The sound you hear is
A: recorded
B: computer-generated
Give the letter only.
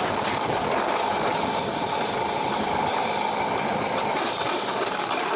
A